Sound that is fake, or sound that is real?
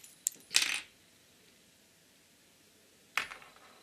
real